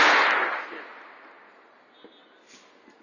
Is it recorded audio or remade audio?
recorded